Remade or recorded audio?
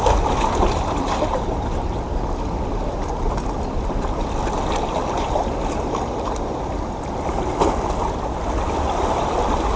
recorded